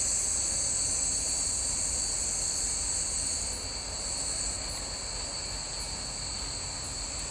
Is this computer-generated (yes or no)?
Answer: no